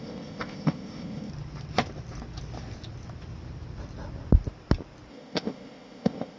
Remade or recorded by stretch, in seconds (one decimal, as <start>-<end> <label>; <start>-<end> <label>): 0.0-1.3 remade; 1.3-5.1 recorded; 5.1-6.4 remade